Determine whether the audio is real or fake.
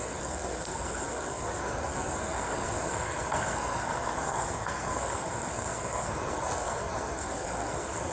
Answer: fake